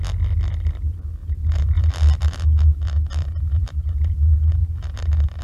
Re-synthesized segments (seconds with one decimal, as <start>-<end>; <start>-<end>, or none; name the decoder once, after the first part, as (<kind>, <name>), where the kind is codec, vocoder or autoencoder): 1.2-1.9 (vocoder, BigVGAN v2); 3.2-4.1